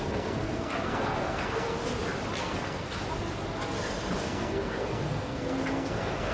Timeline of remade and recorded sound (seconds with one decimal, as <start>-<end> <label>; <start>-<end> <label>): 0.0-1.8 remade; 1.8-2.4 recorded; 2.4-3.0 remade; 3.0-4.2 recorded; 4.2-6.3 remade

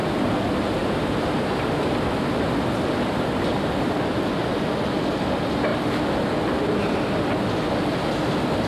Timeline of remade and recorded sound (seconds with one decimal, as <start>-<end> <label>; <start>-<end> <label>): 0.0-8.7 recorded

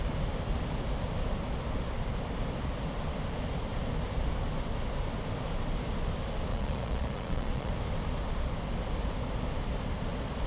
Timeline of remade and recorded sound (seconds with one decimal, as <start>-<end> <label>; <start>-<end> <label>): 0.0-6.5 recorded; 6.5-7.7 remade; 7.7-10.5 recorded

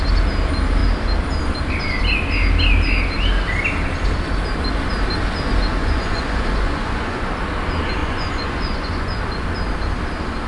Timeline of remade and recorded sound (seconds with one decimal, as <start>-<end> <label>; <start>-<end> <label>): 0.0-5.8 recorded; 5.8-7.3 remade; 7.3-8.0 recorded; 8.0-9.2 remade; 9.2-10.5 recorded

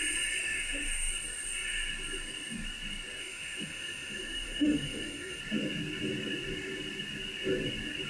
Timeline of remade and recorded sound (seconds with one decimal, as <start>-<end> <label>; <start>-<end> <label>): 0.0-0.4 recorded; 0.4-1.1 remade; 1.1-3.2 recorded; 3.2-5.4 remade; 5.4-8.1 recorded

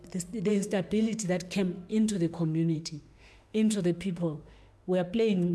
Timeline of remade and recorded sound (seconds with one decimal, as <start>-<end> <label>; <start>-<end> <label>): 0.0-0.5 recorded; 0.5-1.4 remade; 1.4-1.9 recorded; 1.9-5.5 remade

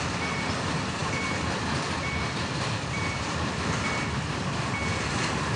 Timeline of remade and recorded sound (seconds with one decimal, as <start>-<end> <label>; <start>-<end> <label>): 0.0-4.9 remade; 4.9-5.6 recorded

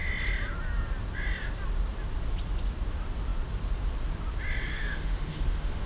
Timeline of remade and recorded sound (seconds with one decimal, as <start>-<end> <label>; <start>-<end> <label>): 0.0-4.7 recorded; 4.7-5.9 remade